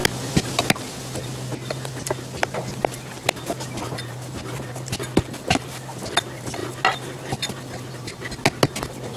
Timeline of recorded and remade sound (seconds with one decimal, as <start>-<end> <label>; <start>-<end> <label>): 0.0-9.2 recorded